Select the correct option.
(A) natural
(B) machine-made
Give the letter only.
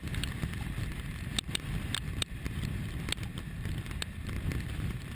A